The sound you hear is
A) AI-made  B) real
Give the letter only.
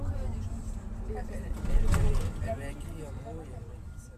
B